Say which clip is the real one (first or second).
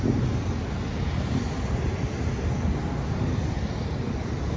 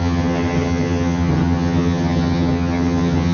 first